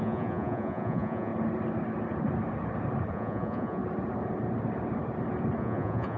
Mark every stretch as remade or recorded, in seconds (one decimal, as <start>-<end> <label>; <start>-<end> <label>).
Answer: 0.0-1.3 remade; 1.3-3.1 recorded; 3.1-3.8 remade; 3.8-5.6 recorded; 5.6-6.2 remade

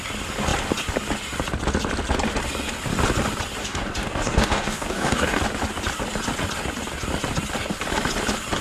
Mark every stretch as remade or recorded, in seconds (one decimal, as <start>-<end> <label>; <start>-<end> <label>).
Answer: 0.0-3.6 recorded; 3.6-5.4 remade; 5.4-8.6 recorded

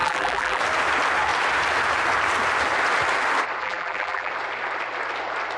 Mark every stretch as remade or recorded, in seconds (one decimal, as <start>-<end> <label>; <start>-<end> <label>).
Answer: 0.0-0.6 remade; 0.6-3.6 recorded; 3.6-4.3 remade; 4.3-5.6 recorded

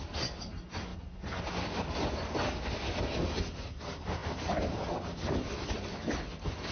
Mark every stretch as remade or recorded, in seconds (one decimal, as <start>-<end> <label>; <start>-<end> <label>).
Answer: 0.0-6.7 recorded

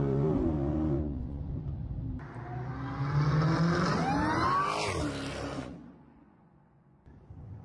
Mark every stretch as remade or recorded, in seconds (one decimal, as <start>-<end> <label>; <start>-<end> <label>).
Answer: 0.0-1.8 remade; 1.8-5.6 recorded; 5.6-7.6 remade

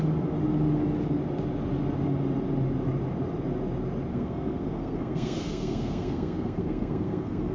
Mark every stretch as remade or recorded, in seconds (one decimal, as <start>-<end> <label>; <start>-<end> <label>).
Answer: 0.0-4.1 recorded; 4.1-7.5 remade

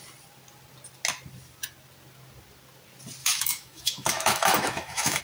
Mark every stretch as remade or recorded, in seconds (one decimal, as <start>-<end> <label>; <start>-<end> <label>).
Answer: 0.0-3.2 recorded; 3.2-5.2 remade